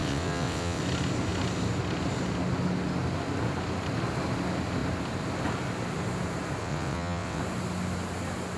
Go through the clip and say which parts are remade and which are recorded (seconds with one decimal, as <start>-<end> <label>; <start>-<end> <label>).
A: 0.0-0.8 remade; 0.8-6.6 recorded; 6.6-7.4 remade; 7.4-8.6 recorded